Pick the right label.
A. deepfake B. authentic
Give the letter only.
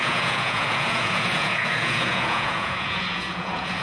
A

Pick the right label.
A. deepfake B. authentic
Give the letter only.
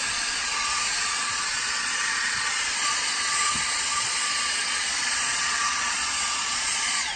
A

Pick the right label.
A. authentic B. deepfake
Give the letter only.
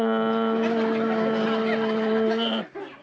A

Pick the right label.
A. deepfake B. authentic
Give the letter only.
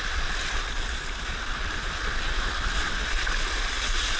B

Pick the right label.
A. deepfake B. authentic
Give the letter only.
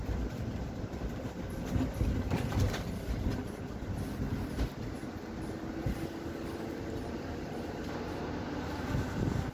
B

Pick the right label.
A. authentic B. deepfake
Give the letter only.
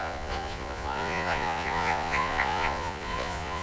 B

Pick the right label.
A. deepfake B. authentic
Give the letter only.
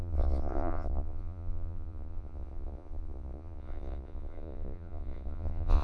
A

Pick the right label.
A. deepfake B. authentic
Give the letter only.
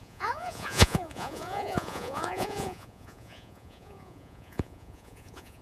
A